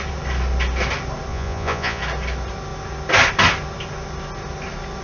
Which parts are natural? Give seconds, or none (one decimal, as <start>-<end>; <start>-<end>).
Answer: 0.0-1.3; 2.0-5.0